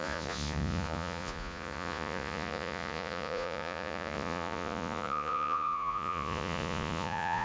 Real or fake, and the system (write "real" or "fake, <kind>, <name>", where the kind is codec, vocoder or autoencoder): fake, vocoder, Vocos